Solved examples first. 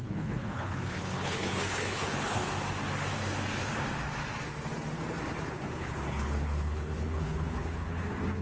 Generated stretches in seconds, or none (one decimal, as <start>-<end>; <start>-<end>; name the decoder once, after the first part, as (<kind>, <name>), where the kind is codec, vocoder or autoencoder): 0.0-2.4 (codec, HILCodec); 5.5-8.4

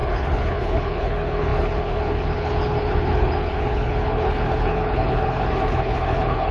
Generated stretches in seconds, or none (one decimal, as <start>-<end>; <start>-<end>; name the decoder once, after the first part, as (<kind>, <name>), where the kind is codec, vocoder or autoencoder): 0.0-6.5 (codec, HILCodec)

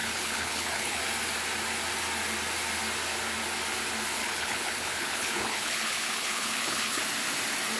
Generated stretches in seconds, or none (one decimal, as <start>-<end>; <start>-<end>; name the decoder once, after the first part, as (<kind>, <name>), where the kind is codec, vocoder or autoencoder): 0.0-1.0 (codec, HILCodec); 4.2-7.0

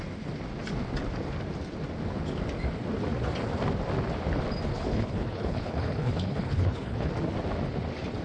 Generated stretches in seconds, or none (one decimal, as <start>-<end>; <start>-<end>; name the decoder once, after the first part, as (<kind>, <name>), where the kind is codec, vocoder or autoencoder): 4.7-7.1 (codec, HILCodec)

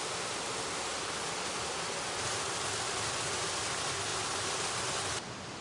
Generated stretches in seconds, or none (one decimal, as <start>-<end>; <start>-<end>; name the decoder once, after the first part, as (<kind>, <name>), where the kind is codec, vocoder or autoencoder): none

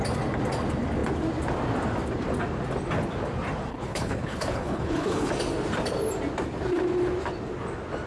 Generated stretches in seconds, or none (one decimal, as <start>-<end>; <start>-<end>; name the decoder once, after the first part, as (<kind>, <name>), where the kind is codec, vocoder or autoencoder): 3.7-5.3 (codec, HILCodec)

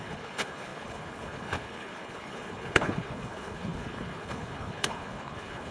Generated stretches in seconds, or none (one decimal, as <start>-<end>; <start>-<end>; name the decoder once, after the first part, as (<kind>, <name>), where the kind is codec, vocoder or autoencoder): 0.0-5.7 (codec, HILCodec)

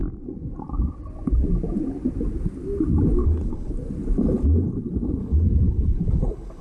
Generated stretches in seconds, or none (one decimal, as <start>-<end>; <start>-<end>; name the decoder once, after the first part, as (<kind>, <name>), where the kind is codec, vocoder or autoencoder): 3.2-3.7 (codec, HILCodec); 5.2-6.6